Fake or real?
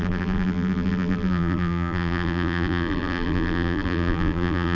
fake